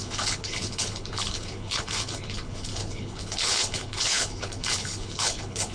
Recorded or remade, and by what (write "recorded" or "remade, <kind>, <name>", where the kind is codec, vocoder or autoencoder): remade, codec, HILCodec